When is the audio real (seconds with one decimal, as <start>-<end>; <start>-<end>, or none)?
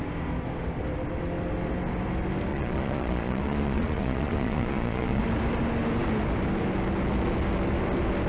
0.0-2.5; 5.2-8.3